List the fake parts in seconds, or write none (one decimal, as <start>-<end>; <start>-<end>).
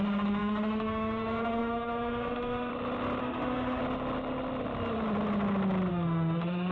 0.0-2.7; 3.2-3.8; 5.9-6.7